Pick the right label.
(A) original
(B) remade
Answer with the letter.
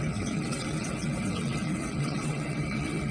B